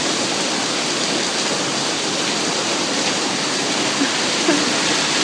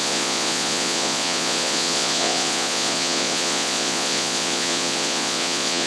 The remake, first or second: second